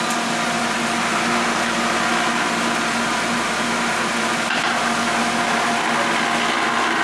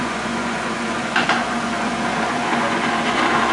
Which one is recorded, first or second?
first